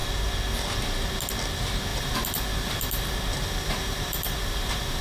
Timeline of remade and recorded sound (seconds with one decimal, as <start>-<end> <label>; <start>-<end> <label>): 0.0-1.9 recorded; 1.9-5.0 remade